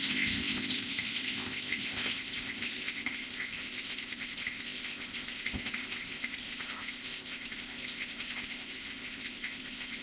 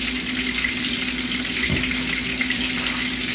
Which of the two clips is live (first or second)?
second